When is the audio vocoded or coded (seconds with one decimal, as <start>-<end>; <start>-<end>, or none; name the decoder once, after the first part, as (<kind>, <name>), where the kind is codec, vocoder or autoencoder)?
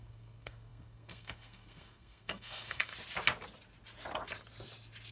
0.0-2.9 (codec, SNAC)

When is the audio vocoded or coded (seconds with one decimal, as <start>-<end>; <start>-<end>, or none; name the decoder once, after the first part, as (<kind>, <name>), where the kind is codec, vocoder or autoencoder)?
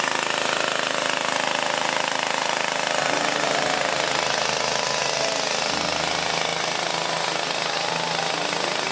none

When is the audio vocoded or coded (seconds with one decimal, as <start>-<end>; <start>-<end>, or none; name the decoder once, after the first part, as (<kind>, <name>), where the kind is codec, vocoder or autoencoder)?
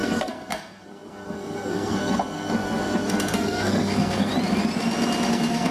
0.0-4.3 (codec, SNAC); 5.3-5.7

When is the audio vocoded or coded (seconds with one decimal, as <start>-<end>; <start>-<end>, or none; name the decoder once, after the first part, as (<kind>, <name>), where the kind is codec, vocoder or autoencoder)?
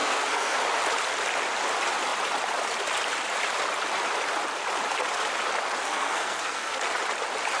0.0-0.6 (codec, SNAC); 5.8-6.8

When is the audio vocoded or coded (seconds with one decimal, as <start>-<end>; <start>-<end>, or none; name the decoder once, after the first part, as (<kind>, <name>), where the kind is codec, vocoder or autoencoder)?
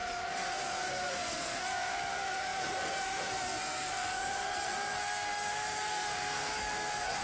0.0-7.2 (codec, SNAC)